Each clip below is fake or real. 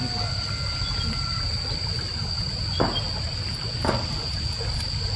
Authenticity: real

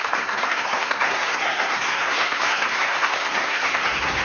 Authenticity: fake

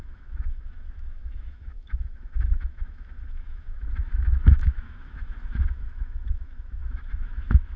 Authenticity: fake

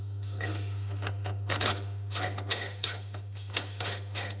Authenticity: fake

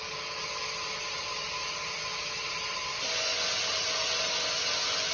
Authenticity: real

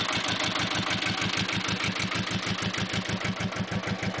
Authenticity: real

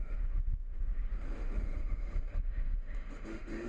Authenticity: fake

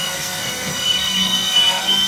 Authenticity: fake